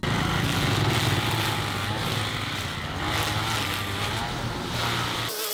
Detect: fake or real real